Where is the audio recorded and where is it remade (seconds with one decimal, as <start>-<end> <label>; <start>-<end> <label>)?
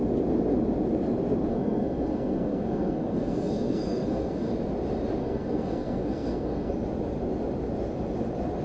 0.0-1.5 recorded; 1.5-4.5 remade; 4.5-5.2 recorded; 5.2-6.7 remade; 6.7-8.6 recorded